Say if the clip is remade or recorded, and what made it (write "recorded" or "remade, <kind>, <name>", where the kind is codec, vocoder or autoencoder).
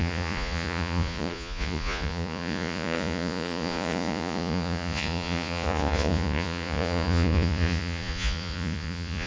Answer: remade, vocoder, Vocos